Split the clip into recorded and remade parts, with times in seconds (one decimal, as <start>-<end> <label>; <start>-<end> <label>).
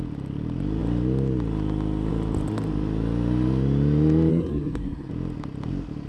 0.0-4.3 recorded; 4.3-5.1 remade; 5.1-6.1 recorded